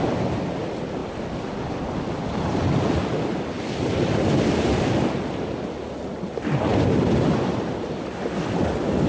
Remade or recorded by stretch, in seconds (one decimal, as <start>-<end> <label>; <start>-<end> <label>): 0.0-9.1 recorded